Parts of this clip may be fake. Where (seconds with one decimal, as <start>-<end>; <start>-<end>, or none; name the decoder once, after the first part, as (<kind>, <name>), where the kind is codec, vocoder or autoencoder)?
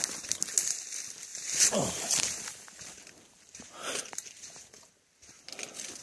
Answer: 1.3-4.9 (vocoder, BigVGAN v2)